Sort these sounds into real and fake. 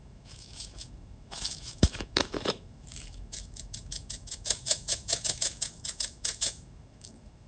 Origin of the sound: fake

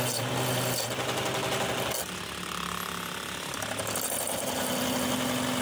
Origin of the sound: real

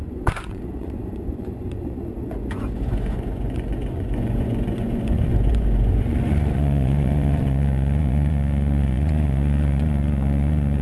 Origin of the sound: fake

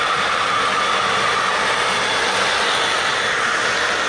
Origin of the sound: real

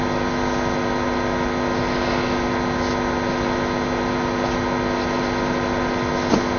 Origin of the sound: real